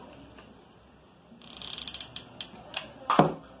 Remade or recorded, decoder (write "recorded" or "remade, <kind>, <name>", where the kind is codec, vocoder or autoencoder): recorded